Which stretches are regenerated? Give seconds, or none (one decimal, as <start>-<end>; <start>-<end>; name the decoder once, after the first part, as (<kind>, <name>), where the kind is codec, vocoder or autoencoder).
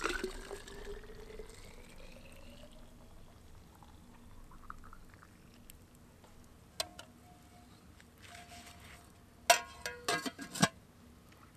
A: none